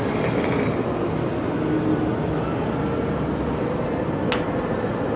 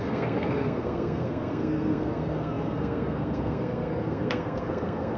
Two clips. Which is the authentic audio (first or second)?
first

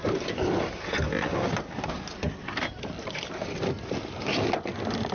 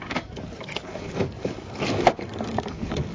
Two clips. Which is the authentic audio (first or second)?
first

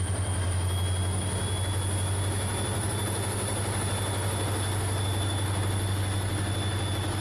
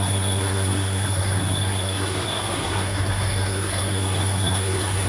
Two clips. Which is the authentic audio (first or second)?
first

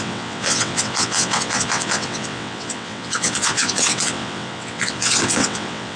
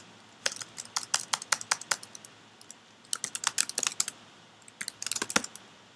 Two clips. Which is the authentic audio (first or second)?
second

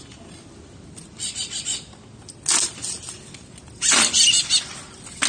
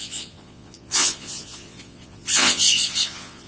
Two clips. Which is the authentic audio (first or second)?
first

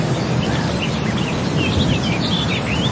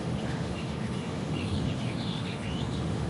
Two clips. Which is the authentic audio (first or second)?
first